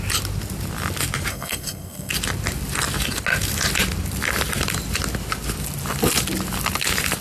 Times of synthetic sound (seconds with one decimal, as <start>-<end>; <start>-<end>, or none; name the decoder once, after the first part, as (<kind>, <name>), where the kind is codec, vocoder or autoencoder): 1.3-2.1 (codec, SNAC)